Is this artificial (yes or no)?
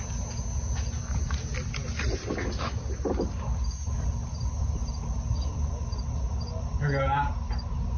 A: no